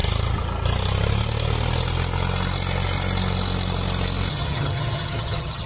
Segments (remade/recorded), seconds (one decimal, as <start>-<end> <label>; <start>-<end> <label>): 0.0-4.3 recorded; 4.3-5.7 remade